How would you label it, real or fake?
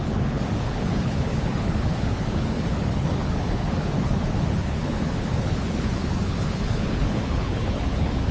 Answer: fake